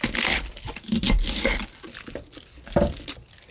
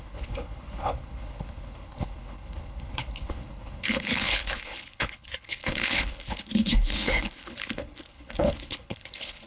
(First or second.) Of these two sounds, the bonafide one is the first